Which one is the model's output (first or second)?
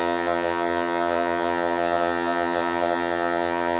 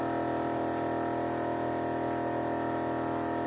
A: first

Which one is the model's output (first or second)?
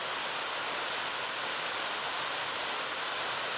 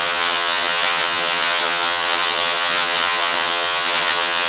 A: second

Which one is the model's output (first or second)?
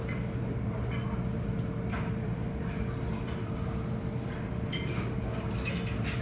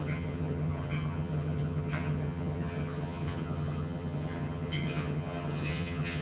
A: second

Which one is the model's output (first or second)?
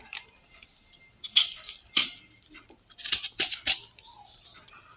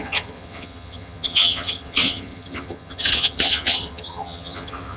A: second